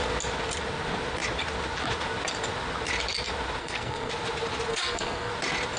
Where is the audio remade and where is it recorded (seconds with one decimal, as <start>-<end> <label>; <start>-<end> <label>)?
0.0-3.6 recorded; 3.6-4.1 remade; 4.1-4.7 recorded; 4.7-5.3 remade; 5.3-5.8 recorded